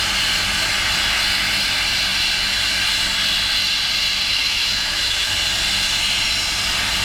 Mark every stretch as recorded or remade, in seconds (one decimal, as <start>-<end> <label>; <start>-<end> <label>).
0.0-4.3 recorded; 4.3-5.3 remade; 5.3-7.0 recorded